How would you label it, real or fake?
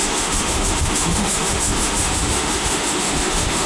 fake